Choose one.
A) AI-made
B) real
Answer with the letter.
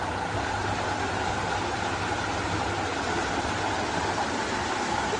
B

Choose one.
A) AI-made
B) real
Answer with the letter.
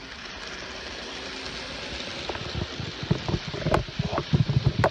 B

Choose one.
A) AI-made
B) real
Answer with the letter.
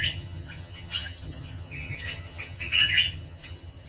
A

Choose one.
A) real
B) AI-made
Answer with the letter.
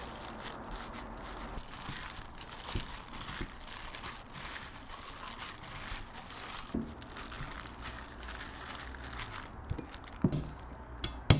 A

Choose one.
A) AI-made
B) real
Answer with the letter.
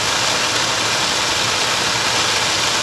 B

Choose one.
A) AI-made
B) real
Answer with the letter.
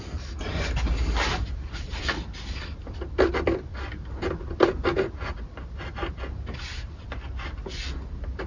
B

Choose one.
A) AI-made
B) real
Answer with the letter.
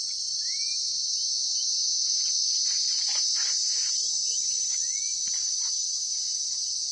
B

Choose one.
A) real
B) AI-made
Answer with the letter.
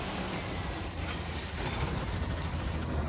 A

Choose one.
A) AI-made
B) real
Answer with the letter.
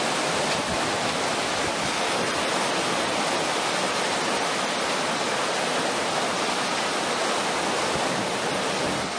B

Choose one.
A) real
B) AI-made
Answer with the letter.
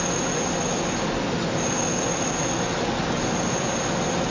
A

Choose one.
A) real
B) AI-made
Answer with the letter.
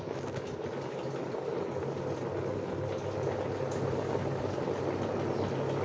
A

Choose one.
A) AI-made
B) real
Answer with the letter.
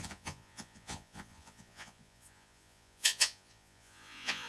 A